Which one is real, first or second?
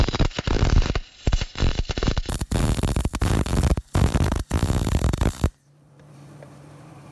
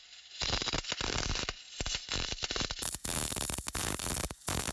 second